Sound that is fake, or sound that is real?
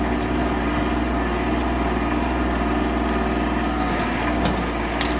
real